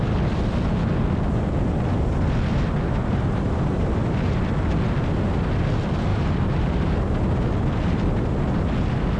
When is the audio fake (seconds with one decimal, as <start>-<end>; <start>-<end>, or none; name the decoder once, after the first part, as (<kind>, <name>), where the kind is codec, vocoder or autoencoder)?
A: 3.0-3.5 (vocoder, BigVGAN v2); 6.1-6.9